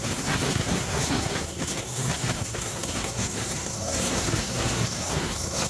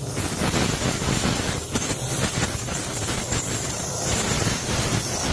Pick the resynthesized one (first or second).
first